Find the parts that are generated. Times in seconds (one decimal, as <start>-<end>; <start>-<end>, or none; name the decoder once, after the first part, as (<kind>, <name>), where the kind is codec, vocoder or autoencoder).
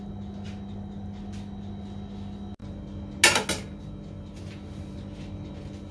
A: none